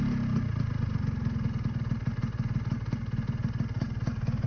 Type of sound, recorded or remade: recorded